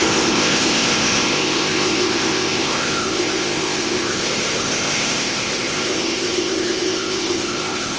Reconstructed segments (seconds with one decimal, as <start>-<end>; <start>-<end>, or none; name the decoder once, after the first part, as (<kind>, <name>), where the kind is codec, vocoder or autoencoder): 0.0-8.0 (codec, ZipCodec)

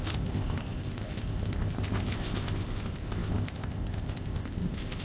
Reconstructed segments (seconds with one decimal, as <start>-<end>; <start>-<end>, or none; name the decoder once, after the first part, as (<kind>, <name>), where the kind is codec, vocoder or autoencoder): 0.0-5.0 (codec, ZipCodec)

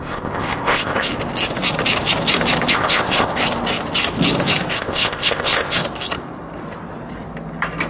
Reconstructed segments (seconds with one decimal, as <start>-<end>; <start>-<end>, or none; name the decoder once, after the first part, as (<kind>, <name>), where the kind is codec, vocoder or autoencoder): 0.0-1.1 (codec, ZipCodec); 2.7-3.4; 4.7-5.8

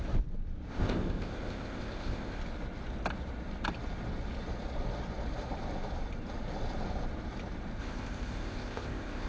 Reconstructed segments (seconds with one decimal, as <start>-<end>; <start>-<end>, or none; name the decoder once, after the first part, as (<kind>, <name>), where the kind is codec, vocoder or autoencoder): 0.7-2.4 (codec, ZipCodec); 7.8-9.3

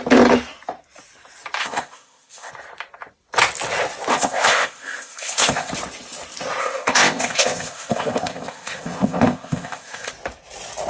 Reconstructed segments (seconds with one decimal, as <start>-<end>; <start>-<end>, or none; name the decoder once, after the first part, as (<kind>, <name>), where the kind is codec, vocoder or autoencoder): 1.6-2.5 (codec, ZipCodec); 4.1-5.7; 6.6-10.1